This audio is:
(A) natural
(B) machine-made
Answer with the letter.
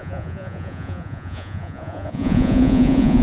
B